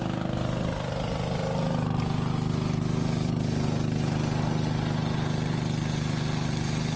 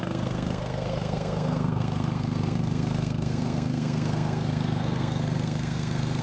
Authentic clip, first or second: first